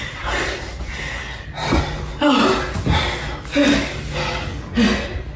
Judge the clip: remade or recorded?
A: recorded